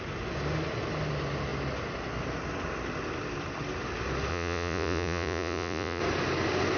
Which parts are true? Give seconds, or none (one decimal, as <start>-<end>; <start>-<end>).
0.0-4.3; 6.0-6.8